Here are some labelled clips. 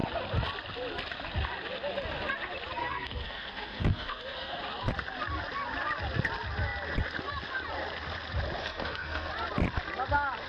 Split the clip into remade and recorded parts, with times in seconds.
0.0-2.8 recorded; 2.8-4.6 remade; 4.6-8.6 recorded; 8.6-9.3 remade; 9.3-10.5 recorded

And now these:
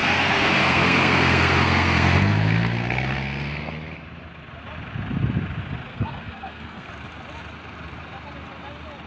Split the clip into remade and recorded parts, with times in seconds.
0.0-3.7 remade; 3.7-5.9 recorded; 5.9-6.9 remade; 6.9-9.1 recorded

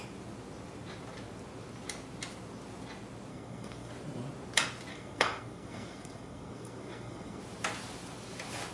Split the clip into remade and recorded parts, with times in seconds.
0.0-3.3 recorded; 3.3-3.9 remade; 3.9-4.9 recorded; 4.9-7.4 remade; 7.4-8.7 recorded

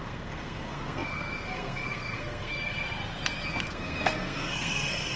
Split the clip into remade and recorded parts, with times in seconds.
0.0-3.0 remade; 3.0-3.6 recorded; 3.6-5.2 remade